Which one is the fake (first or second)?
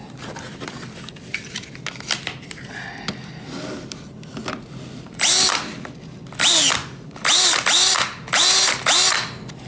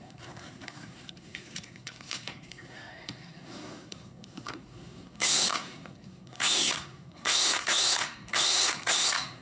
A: second